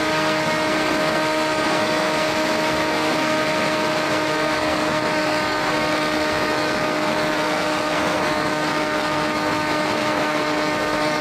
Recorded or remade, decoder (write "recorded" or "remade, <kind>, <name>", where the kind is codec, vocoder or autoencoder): remade, codec, SNAC